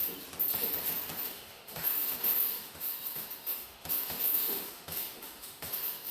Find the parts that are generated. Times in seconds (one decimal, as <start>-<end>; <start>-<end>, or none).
1.2-6.1